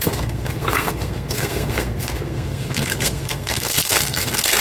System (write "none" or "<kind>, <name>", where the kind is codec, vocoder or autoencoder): codec, SNAC